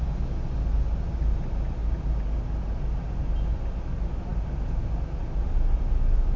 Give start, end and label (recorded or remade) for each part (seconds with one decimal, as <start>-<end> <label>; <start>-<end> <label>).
0.0-6.4 recorded